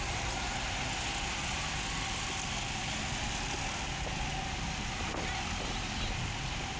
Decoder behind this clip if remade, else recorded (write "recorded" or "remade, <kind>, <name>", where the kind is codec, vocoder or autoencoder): recorded